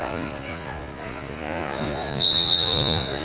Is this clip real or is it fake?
fake